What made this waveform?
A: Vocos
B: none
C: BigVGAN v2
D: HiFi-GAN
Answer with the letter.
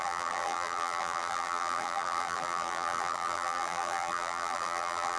C